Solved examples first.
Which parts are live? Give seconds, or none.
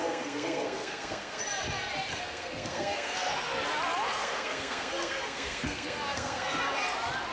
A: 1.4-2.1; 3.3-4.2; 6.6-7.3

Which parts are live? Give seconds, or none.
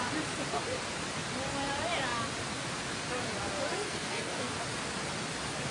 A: 0.0-3.7; 4.5-5.7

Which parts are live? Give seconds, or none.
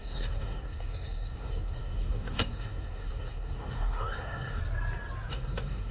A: 4.6-5.3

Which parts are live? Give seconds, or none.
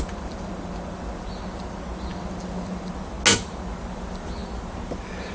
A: 0.0-5.3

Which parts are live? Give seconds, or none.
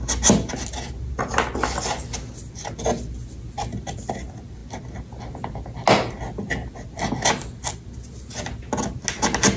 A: 0.0-9.6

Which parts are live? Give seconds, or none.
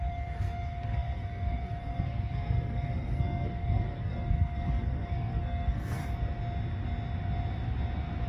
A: 6.0-8.3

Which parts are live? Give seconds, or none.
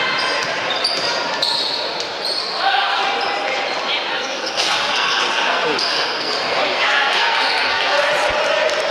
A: 0.0-2.4; 3.0-4.1; 8.1-8.9